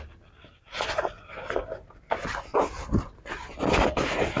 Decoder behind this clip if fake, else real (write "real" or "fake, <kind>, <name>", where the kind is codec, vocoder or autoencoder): real